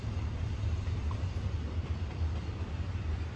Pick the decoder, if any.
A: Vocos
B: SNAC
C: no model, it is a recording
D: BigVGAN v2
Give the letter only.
D